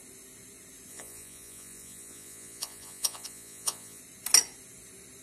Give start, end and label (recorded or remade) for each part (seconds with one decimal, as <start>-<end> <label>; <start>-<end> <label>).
0.0-0.9 recorded; 0.9-4.0 remade; 4.0-5.2 recorded